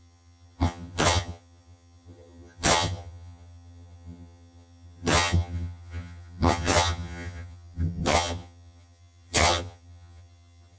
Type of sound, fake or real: fake